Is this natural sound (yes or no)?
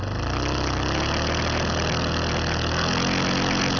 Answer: yes